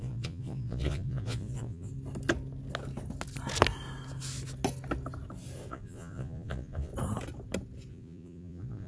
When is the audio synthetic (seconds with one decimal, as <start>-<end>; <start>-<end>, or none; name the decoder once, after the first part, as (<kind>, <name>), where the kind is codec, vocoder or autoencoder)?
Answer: 0.0-1.9 (vocoder, Vocos); 5.7-6.9; 7.9-8.9